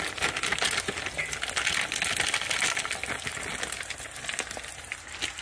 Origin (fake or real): real